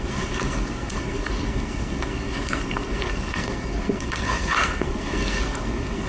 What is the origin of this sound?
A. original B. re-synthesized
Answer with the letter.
B